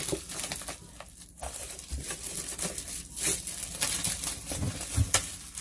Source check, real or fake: real